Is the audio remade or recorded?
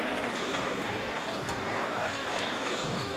remade